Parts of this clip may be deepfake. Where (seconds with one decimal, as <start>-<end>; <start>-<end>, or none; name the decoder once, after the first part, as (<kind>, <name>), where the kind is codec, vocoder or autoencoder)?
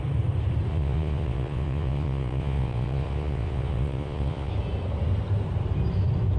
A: 0.7-4.5 (vocoder, Vocos)